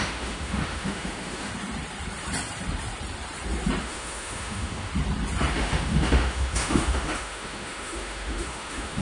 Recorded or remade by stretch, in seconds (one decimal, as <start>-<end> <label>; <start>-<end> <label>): 0.0-1.5 remade; 1.5-3.8 recorded; 3.8-4.9 remade; 4.9-5.5 recorded; 5.5-9.0 remade